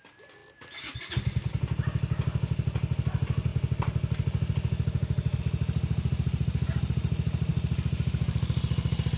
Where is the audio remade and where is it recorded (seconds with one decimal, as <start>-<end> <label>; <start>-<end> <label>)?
0.0-9.2 recorded